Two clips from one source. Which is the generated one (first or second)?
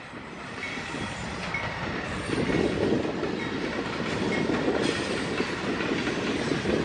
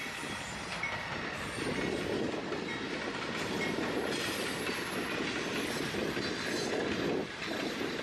first